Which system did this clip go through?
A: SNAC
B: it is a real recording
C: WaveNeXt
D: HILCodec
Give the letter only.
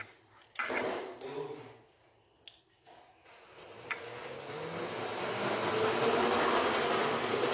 B